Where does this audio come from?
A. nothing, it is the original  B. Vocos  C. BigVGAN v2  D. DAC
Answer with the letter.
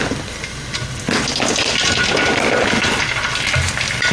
A